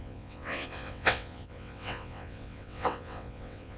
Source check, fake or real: fake